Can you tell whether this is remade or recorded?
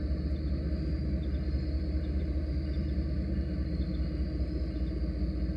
recorded